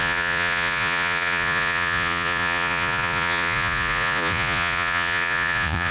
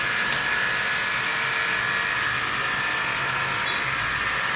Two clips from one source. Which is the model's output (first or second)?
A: first